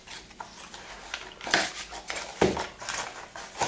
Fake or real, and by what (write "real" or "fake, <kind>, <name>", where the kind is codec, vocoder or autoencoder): real